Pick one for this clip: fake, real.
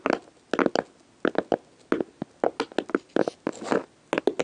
real